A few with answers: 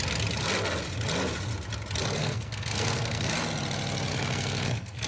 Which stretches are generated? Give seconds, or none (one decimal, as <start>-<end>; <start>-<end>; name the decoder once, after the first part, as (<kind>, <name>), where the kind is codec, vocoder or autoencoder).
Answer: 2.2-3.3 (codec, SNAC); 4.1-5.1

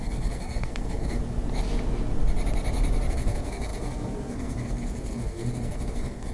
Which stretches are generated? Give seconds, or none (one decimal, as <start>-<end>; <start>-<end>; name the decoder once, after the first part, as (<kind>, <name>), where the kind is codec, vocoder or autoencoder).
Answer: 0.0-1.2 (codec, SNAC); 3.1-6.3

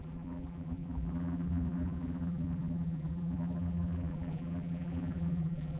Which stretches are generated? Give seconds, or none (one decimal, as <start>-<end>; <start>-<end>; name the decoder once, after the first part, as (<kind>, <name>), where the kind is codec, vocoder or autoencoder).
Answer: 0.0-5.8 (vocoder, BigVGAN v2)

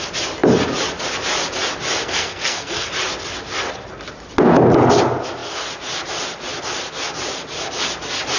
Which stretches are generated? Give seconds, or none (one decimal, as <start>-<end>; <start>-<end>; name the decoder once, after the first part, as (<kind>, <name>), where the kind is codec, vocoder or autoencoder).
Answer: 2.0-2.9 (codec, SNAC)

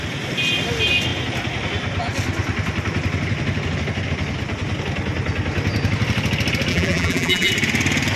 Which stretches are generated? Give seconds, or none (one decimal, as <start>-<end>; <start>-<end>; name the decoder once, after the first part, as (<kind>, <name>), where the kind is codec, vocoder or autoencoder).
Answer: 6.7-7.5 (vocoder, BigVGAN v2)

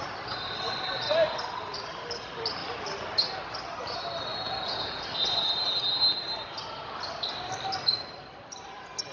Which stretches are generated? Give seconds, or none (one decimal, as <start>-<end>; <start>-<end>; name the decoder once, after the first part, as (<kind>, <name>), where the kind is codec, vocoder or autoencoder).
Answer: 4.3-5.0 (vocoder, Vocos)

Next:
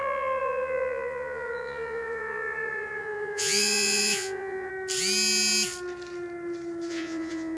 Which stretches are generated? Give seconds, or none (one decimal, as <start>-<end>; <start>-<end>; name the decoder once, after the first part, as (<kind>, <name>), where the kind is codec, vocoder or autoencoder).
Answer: 0.0-4.7 (vocoder, Vocos); 6.9-7.6